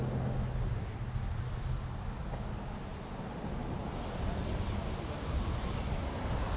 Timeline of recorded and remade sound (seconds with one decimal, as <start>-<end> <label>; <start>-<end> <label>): 0.0-6.6 recorded

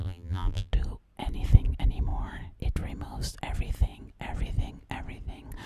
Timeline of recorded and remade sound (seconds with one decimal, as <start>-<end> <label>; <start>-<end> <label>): 0.0-0.7 remade; 0.7-5.7 recorded

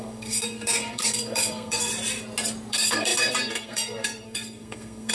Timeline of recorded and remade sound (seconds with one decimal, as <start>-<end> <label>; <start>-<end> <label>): 0.0-1.9 remade; 1.9-2.7 recorded; 2.7-5.1 remade